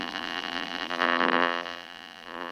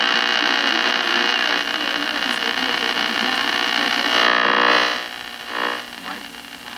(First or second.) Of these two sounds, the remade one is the first